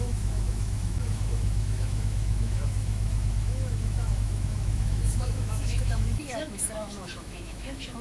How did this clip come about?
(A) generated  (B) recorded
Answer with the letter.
A